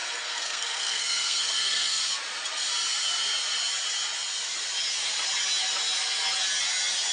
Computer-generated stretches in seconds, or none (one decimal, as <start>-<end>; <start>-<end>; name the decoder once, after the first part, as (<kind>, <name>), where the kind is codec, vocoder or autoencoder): 0.0-2.0 (codec, SNAC)